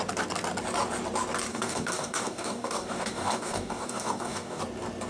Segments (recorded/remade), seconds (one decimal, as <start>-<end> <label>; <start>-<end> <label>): 0.0-1.5 recorded; 1.5-4.6 remade; 4.6-5.1 recorded